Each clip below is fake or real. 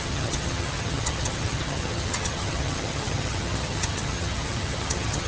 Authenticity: fake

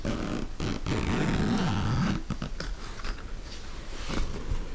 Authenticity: real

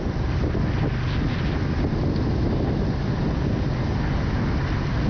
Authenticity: real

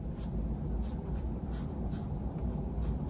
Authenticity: real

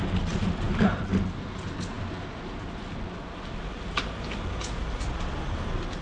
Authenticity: real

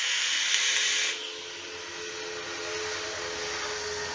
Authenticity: real